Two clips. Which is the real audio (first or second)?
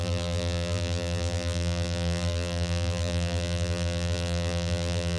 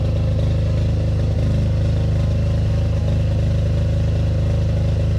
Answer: second